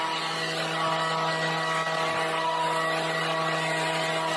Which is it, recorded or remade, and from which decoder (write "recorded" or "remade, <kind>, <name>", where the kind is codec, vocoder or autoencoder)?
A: recorded